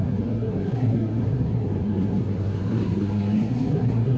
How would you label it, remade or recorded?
remade